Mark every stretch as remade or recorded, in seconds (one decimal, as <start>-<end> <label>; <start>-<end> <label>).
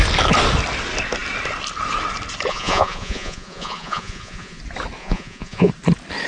0.0-2.5 recorded; 2.5-4.6 remade; 4.6-5.0 recorded; 5.0-5.7 remade; 5.7-6.3 recorded